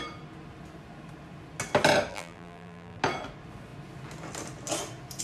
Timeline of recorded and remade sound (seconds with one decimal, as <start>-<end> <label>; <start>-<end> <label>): 0.0-2.1 recorded; 2.1-3.0 remade; 3.0-5.2 recorded